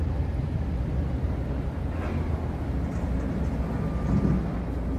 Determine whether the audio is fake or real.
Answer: real